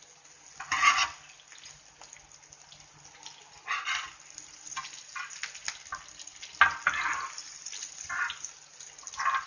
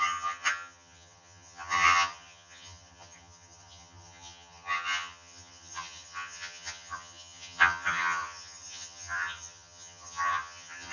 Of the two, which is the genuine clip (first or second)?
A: first